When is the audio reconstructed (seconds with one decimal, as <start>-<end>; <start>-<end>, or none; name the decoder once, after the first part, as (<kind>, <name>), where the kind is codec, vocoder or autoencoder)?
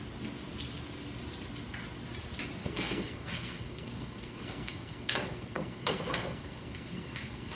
2.6-7.6 (codec, SNAC)